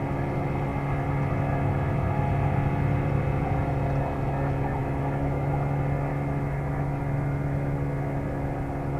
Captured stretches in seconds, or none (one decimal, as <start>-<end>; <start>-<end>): 0.0-4.8; 5.5-6.1; 7.0-9.0